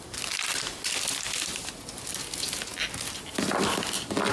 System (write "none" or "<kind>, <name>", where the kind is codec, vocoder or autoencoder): none